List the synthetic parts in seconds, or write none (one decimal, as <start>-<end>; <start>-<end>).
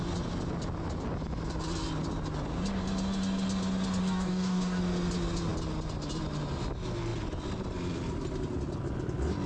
4.0-4.8